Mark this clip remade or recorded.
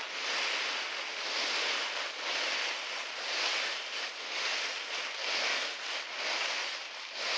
recorded